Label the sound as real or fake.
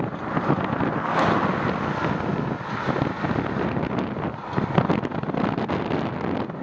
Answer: real